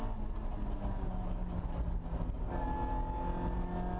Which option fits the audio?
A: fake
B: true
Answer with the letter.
B